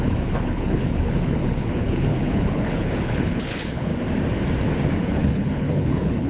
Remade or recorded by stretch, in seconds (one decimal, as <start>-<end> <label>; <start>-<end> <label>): 0.0-3.9 remade; 3.9-5.0 recorded; 5.0-6.3 remade